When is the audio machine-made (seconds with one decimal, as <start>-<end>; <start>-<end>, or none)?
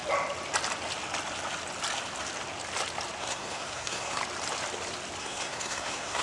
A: 3.2-4.2; 5.2-6.2